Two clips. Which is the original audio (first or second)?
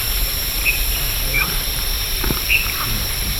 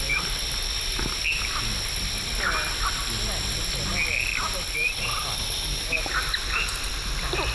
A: second